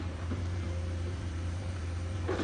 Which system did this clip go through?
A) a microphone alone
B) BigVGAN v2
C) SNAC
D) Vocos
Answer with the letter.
B